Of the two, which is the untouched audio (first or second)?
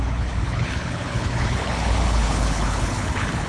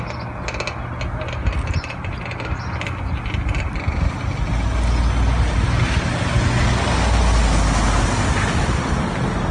second